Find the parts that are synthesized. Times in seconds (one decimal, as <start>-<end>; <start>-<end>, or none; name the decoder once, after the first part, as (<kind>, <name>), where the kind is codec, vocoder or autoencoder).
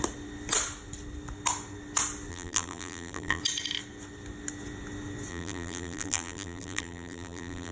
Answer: 2.3-3.4 (vocoder, BigVGAN v2); 5.3-7.7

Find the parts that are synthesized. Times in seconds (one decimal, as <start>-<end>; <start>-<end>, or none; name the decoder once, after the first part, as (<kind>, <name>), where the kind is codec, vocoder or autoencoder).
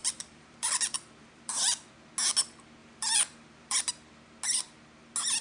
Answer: 0.0-1.9 (vocoder, BigVGAN v2); 2.8-3.9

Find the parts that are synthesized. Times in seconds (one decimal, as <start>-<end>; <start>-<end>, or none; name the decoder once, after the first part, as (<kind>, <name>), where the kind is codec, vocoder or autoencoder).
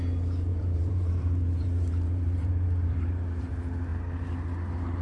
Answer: 0.5-3.5 (vocoder, BigVGAN v2)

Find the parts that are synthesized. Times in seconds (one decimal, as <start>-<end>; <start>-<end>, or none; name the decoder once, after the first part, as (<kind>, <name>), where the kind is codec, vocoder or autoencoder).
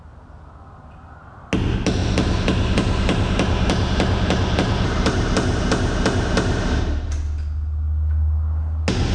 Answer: 2.0-5.3 (vocoder, BigVGAN v2)